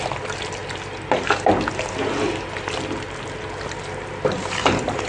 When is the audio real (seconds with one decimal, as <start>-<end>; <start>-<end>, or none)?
0.0-5.1